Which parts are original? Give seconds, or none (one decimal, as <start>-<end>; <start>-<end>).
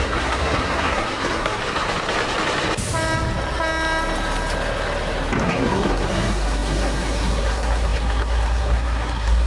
1.6-5.4